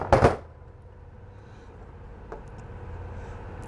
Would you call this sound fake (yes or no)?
no